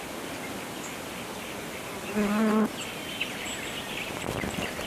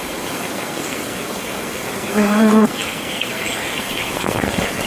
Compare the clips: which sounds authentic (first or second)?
first